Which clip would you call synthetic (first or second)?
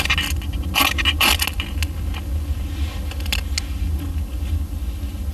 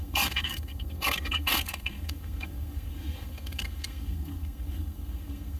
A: second